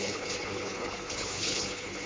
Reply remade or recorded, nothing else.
remade